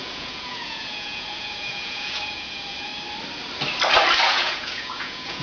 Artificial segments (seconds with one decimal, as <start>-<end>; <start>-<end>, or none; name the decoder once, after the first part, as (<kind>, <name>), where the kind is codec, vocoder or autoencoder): 0.0-2.9 (vocoder, Vocos); 4.2-5.4

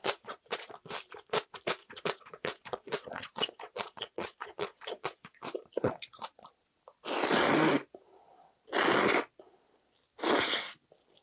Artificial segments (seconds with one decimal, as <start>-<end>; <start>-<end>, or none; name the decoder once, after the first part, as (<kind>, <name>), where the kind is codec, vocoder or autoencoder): 0.0-0.7 (vocoder, Vocos); 1.8-6.8